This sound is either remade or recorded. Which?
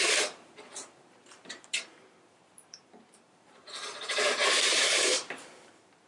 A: remade